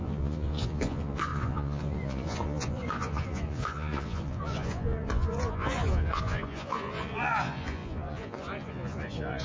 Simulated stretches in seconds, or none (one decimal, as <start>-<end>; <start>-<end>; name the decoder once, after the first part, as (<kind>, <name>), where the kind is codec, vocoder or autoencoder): 0.0-9.4 (vocoder, Vocos)

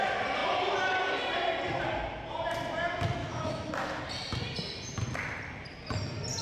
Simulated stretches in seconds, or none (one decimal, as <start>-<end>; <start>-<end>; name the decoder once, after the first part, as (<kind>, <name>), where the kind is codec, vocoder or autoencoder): 3.2-3.7 (autoencoder, DAC-VAE)

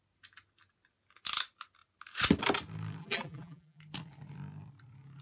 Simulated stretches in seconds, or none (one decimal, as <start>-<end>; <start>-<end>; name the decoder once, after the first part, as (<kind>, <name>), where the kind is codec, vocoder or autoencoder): 3.0-3.8 (vocoder, BigVGAN v2)

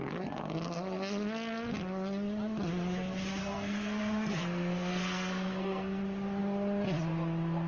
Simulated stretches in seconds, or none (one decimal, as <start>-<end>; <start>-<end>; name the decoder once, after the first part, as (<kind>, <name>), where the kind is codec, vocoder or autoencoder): 3.4-6.0 (codec, SNAC)